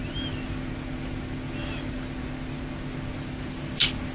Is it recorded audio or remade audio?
recorded